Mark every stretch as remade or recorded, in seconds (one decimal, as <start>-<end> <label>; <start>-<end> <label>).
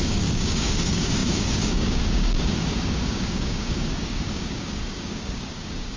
0.0-6.0 remade